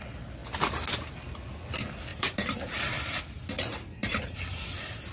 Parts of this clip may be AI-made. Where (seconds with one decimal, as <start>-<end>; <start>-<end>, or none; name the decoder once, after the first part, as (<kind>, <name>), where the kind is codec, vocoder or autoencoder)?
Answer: 2.1-3.2 (vocoder, BigVGAN v2); 4.0-5.1